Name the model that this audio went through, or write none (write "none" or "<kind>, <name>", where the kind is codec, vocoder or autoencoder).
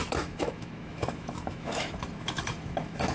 autoencoder, DAC-VAE